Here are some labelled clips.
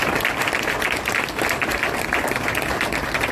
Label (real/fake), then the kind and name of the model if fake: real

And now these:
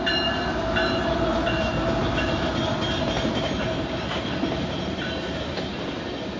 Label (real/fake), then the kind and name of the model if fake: real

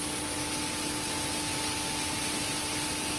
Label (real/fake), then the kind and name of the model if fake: real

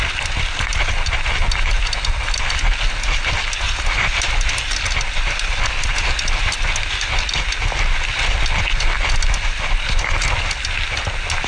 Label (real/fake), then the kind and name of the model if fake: real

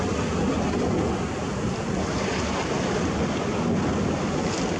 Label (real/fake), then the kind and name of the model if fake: real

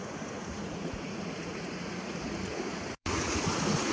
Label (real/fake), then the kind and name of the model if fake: fake, vocoder, Vocos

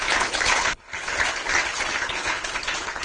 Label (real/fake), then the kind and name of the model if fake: fake, codec, HILCodec